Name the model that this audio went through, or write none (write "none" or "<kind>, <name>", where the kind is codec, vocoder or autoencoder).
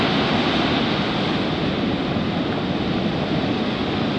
none